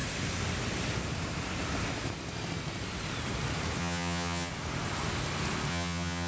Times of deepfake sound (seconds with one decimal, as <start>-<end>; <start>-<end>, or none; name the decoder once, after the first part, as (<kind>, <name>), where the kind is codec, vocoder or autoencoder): 3.8-4.5 (vocoder, HiFi-GAN); 5.7-6.3